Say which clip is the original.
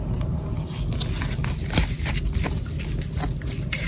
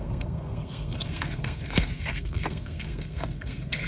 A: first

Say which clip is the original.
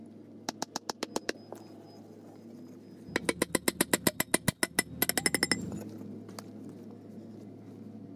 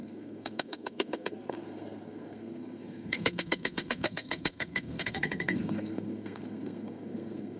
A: first